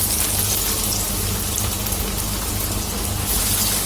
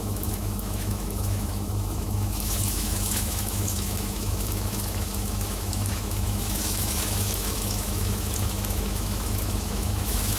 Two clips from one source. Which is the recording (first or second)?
first